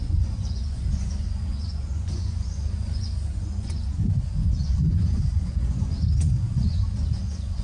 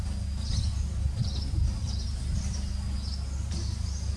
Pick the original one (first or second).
second